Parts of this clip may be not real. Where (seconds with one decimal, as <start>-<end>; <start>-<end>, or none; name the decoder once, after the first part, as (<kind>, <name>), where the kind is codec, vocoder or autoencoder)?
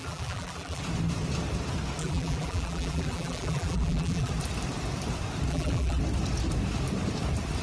0.0-0.8 (vocoder, BigVGAN v2); 2.0-4.3; 5.5-6.0